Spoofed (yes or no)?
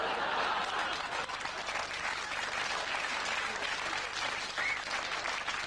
no